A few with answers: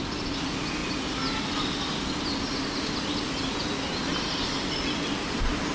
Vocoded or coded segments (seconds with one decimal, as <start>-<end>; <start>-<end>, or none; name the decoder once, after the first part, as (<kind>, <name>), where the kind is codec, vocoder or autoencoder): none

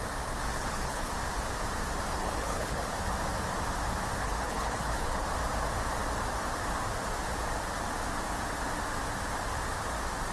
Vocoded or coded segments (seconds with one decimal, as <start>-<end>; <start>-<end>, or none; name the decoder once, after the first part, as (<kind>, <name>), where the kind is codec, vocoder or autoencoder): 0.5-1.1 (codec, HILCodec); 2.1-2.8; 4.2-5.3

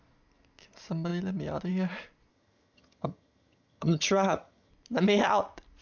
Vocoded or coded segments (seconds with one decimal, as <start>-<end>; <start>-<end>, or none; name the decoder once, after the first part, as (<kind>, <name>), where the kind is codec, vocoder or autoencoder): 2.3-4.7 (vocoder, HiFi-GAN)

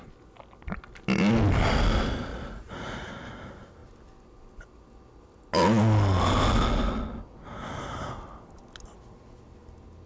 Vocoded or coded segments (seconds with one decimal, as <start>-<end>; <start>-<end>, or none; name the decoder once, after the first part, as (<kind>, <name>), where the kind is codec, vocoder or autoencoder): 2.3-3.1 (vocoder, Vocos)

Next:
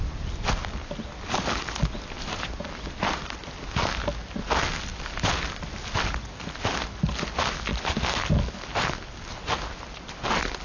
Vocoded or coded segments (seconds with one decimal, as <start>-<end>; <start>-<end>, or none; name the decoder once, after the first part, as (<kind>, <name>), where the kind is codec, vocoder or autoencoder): none

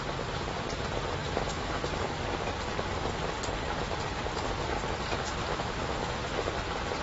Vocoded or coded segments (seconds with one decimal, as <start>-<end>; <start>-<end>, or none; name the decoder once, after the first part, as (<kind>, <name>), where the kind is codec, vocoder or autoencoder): 1.2-1.7 (autoencoder, DAC-VAE); 5.5-6.4